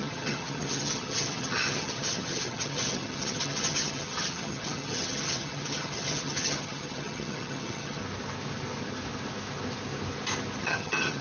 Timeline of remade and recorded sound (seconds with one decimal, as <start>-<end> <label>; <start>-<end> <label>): 0.0-8.0 remade; 8.0-10.6 recorded; 10.6-11.2 remade